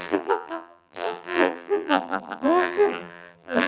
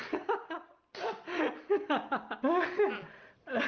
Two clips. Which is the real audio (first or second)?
second